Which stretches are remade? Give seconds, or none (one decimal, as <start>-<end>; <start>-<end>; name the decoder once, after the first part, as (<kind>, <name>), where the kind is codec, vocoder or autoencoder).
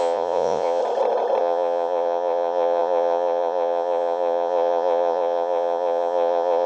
0.0-0.8 (vocoder, Vocos); 1.4-6.7